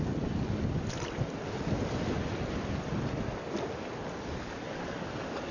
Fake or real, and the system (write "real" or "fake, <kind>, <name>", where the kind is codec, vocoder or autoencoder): real